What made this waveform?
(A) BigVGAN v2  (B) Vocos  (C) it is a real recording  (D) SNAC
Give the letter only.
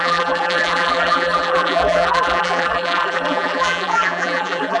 A